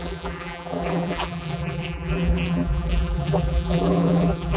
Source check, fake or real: fake